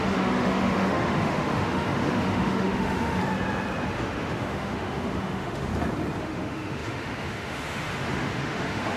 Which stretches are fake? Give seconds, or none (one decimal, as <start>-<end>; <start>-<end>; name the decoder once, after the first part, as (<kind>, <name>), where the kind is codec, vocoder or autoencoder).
0.0-3.2 (autoencoder, DAC-VAE); 3.9-5.7; 6.2-9.0